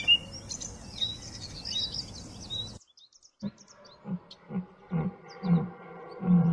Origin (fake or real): real